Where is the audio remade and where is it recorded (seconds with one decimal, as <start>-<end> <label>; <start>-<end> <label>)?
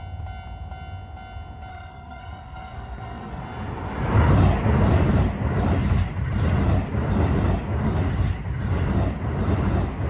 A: 0.0-1.7 recorded; 1.7-3.4 remade; 3.4-10.1 recorded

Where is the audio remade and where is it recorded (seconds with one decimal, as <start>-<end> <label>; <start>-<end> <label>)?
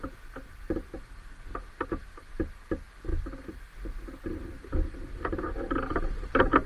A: 0.0-6.7 recorded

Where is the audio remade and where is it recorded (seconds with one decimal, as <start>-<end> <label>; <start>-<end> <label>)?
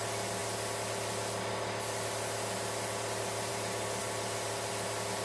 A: 0.0-5.2 recorded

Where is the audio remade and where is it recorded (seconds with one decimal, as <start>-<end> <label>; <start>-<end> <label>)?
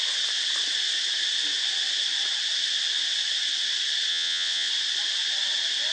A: 0.0-4.1 recorded; 4.1-4.7 remade; 4.7-5.9 recorded